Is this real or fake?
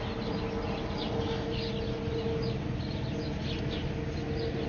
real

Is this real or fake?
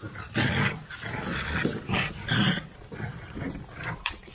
real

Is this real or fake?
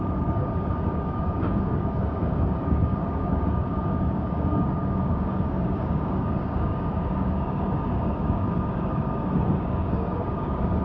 fake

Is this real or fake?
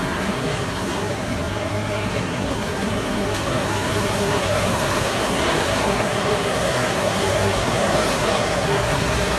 fake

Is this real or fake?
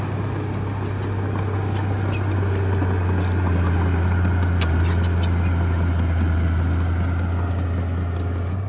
real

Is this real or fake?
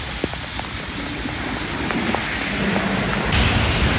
real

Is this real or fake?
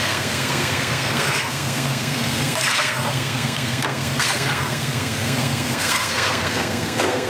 fake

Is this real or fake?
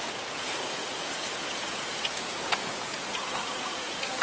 fake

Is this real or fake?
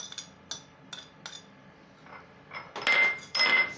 real